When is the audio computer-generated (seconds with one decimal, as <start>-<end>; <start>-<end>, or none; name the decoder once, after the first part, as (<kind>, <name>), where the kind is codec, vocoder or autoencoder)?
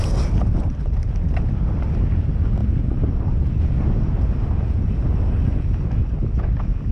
none